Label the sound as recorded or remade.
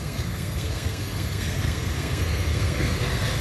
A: remade